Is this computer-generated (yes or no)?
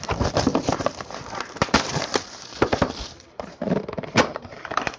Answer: yes